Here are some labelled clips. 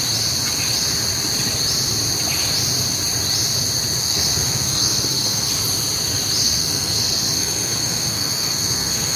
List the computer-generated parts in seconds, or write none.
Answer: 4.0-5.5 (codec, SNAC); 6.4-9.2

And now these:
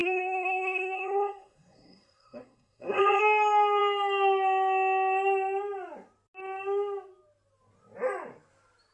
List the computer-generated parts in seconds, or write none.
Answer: 0.0-3.2 (codec, SNAC)